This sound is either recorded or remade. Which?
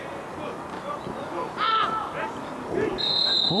recorded